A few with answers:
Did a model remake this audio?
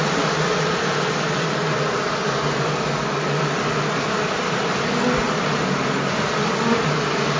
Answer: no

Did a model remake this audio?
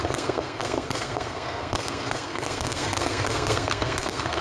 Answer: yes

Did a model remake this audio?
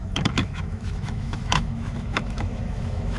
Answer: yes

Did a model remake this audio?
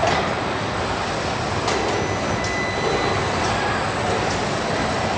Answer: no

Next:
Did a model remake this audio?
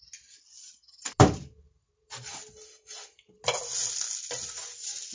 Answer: no